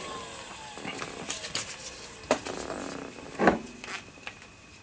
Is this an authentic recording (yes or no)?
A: yes